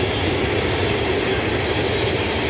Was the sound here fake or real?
real